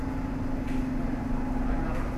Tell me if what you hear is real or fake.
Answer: real